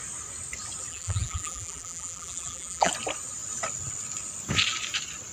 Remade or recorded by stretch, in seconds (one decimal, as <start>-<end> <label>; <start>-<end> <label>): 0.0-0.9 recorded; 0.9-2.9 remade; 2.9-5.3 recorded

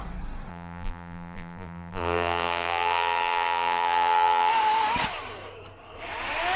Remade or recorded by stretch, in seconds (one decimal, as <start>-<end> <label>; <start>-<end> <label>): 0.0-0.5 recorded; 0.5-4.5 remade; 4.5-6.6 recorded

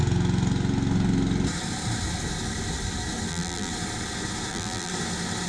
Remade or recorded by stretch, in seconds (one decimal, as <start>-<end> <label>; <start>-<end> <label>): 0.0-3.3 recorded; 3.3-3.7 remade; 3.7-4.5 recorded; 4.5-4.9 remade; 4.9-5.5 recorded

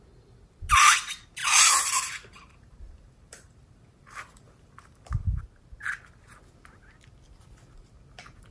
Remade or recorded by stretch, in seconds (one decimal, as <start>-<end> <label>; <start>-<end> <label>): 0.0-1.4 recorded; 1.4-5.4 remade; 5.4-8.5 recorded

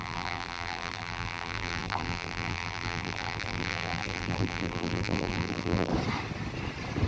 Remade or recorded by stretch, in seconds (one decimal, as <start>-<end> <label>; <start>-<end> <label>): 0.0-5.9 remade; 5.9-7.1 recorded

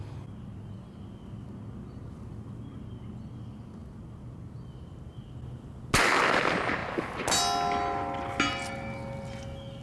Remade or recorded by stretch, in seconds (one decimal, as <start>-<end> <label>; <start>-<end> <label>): 0.0-9.8 recorded

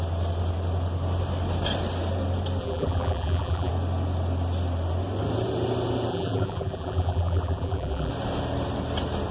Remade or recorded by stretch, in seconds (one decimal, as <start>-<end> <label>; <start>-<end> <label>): 0.0-2.6 recorded; 2.6-3.7 remade; 3.7-6.1 recorded; 6.1-8.1 remade; 8.1-9.3 recorded

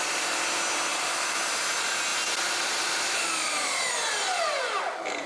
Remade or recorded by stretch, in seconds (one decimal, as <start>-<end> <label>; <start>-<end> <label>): 0.0-0.9 recorded; 0.9-1.5 remade; 1.5-5.3 recorded